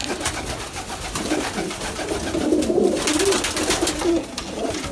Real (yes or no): yes